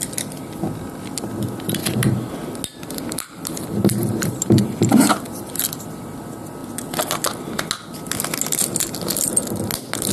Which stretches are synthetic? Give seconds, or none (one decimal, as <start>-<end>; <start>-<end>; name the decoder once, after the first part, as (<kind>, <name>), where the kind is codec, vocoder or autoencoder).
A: 1.8-2.3 (vocoder, BigVGAN v2); 2.7-5.5